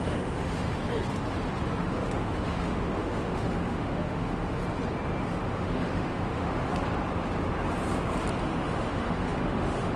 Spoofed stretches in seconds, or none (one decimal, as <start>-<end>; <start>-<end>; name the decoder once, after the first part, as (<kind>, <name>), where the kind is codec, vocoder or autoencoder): 0.0-0.8 (autoencoder, DAC-VAE); 1.8-4.6; 5.2-6.7; 8.4-10.0